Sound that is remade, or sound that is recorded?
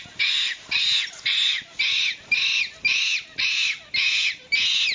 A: recorded